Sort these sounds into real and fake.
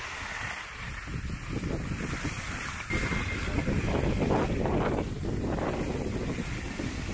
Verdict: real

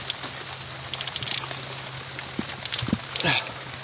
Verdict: real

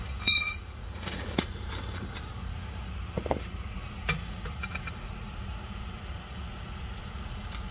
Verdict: fake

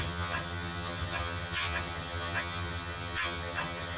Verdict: fake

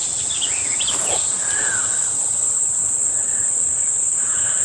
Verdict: real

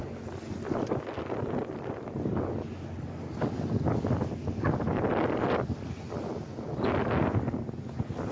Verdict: real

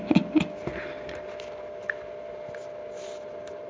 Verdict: real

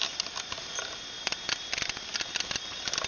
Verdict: real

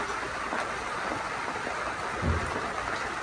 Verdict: real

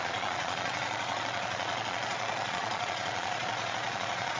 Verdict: fake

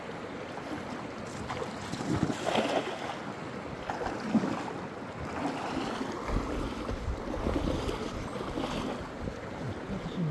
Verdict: real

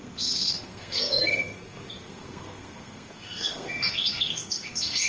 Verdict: fake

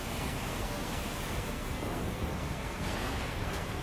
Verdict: fake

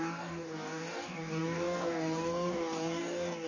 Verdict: fake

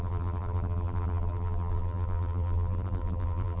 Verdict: fake